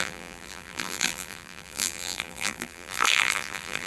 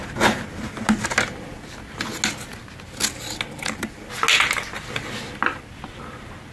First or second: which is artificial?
first